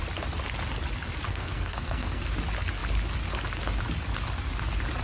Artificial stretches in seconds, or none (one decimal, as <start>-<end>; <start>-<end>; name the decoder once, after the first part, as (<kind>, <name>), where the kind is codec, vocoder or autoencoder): 1.3-2.2 (codec, SNAC)